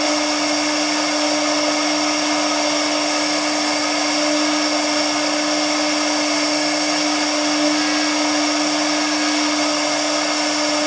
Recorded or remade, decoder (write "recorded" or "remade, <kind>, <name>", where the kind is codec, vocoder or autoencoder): recorded